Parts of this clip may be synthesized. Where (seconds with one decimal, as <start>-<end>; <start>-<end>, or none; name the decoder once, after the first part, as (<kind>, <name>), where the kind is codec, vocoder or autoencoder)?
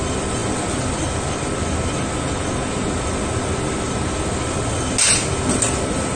none